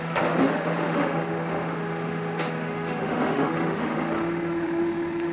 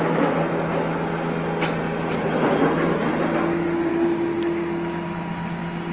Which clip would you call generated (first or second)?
first